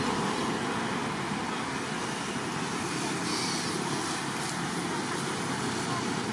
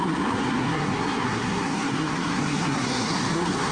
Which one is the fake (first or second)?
second